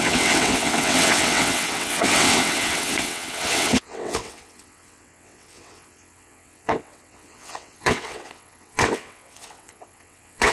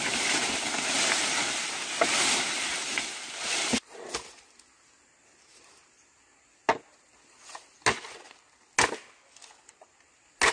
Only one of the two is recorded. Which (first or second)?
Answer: second